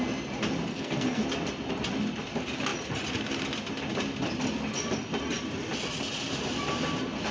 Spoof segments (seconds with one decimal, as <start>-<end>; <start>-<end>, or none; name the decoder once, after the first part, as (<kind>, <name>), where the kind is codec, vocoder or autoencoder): 0.7-1.2 (codec, SNAC)